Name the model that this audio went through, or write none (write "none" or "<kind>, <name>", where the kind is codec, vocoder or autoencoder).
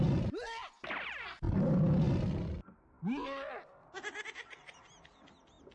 none